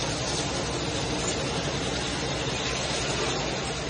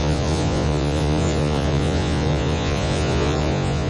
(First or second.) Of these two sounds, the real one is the first